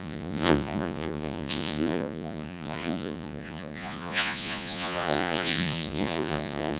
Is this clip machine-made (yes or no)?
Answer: yes